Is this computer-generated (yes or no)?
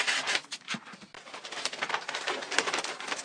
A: no